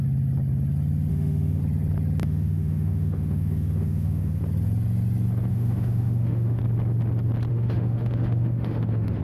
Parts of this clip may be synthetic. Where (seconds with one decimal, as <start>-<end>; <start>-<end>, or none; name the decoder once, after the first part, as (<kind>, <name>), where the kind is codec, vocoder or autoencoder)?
1.1-1.6 (autoencoder, DAC-VAE); 2.2-4.4; 5.5-6.6; 7.5-9.2